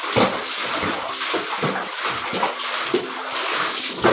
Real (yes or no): yes